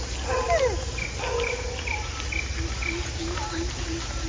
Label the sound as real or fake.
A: real